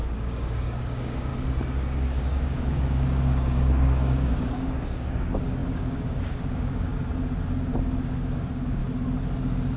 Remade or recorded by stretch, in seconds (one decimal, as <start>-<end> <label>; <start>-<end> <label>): 0.0-1.3 remade; 1.3-2.2 recorded; 2.2-6.9 remade; 6.9-8.0 recorded; 8.0-8.8 remade; 8.8-9.8 recorded